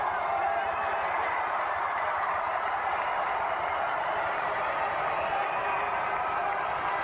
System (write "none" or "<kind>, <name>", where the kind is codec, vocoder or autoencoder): none